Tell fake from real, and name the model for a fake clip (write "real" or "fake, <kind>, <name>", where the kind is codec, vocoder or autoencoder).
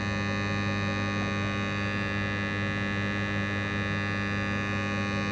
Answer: real